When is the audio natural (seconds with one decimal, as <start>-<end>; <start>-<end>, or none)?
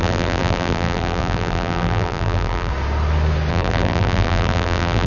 2.7-3.5